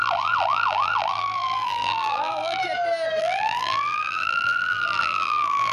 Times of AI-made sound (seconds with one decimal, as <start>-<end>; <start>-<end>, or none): 0.0-2.6; 3.2-5.7